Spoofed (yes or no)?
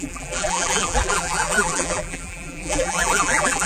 yes